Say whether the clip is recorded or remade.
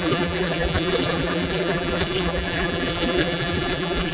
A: remade